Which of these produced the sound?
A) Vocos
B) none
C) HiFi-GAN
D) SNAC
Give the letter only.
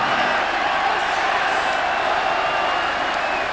B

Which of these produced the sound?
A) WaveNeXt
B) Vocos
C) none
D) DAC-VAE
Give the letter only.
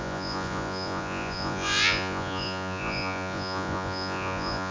B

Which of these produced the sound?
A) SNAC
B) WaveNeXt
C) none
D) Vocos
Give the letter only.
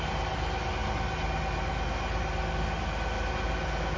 C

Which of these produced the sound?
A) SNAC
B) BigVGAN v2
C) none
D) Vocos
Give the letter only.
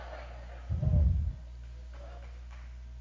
C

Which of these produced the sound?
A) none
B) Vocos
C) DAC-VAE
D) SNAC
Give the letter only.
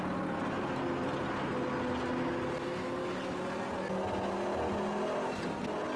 A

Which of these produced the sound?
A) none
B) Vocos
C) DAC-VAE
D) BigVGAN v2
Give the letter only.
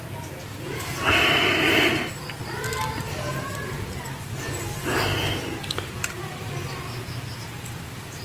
A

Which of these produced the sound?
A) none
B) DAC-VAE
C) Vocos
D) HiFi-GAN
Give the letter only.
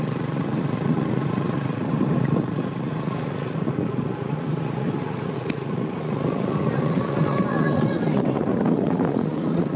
C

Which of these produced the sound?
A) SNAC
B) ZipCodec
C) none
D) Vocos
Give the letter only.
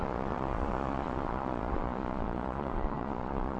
D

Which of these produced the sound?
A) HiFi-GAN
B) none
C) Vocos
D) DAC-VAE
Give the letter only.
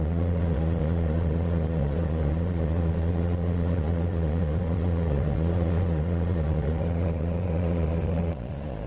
C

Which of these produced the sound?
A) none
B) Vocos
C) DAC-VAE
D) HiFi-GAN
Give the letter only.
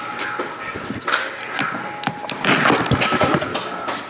A